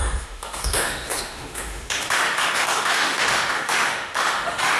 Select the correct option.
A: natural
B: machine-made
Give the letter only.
B